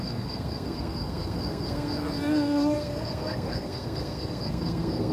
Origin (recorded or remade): remade